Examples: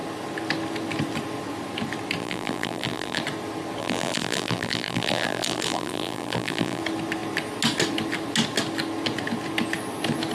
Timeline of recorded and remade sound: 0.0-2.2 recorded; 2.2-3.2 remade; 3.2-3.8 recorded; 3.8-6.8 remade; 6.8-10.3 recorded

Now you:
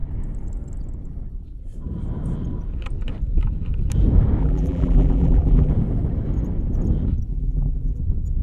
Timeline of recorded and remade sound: 0.0-4.4 recorded; 4.4-5.7 remade; 5.7-7.3 recorded; 7.3-8.0 remade; 8.0-8.4 recorded

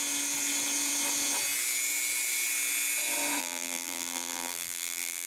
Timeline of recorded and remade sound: 0.0-3.4 recorded; 3.4-5.3 remade

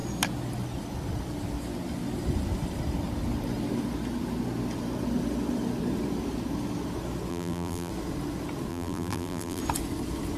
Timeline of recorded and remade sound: 0.0-7.3 recorded; 7.3-7.9 remade; 7.9-8.7 recorded; 8.7-9.6 remade; 9.6-10.4 recorded

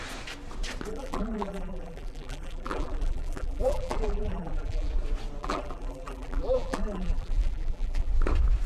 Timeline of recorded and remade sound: 0.0-0.9 recorded; 0.9-4.9 remade; 4.9-5.4 recorded; 5.4-8.1 remade; 8.1-8.7 recorded

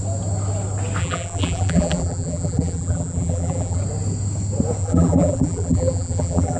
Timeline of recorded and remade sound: 0.0-1.0 recorded; 1.0-3.8 remade; 3.8-4.8 recorded; 4.8-6.6 remade

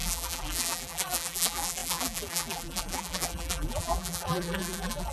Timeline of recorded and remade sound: 0.0-5.1 remade

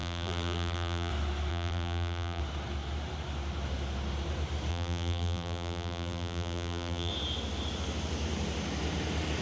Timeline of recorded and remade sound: 0.0-1.1 remade; 1.1-1.5 recorded; 1.5-2.4 remade; 2.4-4.7 recorded; 4.7-7.1 remade; 7.1-9.4 recorded